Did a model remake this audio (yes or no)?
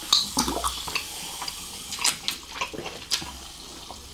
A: no